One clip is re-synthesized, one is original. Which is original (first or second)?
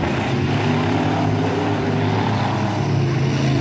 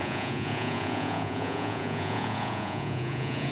first